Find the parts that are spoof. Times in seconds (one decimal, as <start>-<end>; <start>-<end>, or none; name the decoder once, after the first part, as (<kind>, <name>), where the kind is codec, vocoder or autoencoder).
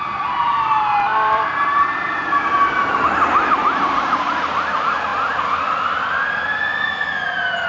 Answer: 1.1-3.0 (vocoder, BigVGAN v2)